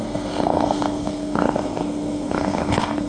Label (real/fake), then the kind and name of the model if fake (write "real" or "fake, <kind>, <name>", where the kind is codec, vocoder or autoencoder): fake, codec, SNAC